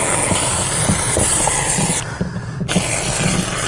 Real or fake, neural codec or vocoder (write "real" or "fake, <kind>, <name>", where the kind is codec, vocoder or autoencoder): real